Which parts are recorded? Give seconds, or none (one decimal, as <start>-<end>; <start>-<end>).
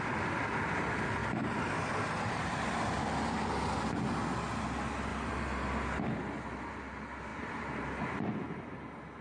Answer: 0.0-1.2; 2.8-7.3; 8.3-9.2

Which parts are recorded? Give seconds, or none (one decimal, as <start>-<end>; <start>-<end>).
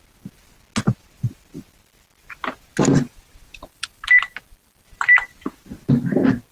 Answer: 0.0-2.9; 5.3-6.5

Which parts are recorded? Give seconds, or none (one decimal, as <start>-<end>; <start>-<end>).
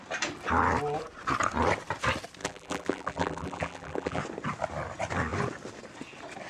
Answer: 0.0-2.4; 4.2-6.5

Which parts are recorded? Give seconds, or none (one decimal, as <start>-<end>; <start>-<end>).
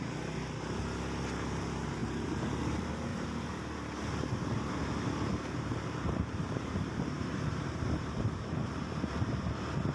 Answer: 0.0-3.1; 4.4-5.3; 9.3-9.9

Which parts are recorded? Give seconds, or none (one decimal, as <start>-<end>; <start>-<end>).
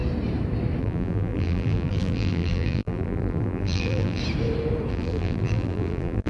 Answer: 0.0-0.8; 4.2-4.9